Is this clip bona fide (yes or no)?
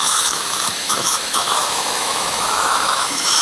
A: no